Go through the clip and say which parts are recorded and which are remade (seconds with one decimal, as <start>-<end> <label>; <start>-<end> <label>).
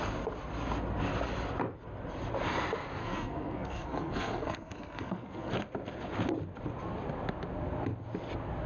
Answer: 0.0-3.0 recorded; 3.0-5.5 remade; 5.5-8.7 recorded